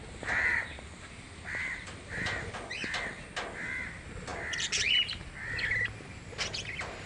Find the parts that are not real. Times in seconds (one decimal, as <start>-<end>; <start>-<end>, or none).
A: none